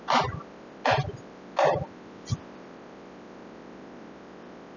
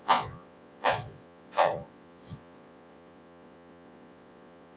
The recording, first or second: first